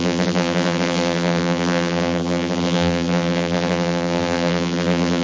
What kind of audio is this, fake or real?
fake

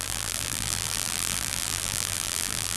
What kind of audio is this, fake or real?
fake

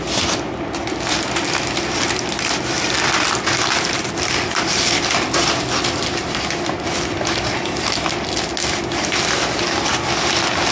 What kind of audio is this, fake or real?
real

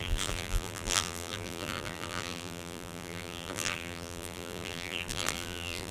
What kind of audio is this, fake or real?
fake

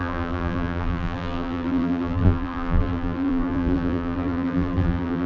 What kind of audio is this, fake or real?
fake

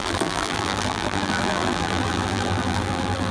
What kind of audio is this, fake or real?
fake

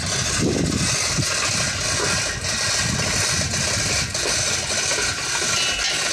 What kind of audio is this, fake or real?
real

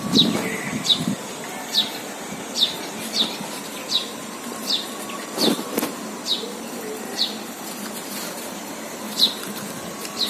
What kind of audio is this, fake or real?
fake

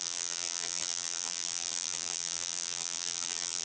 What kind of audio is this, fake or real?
fake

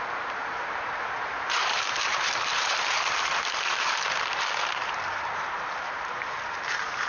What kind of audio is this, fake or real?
fake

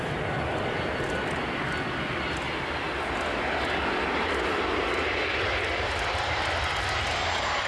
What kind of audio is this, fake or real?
real